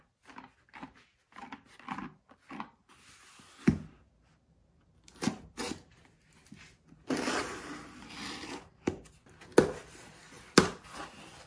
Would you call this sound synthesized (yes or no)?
no